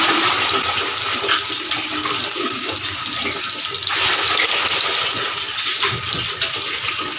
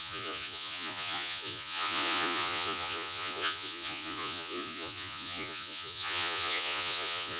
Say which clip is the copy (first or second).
second